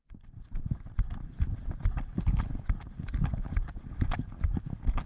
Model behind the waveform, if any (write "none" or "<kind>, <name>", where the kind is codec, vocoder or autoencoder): none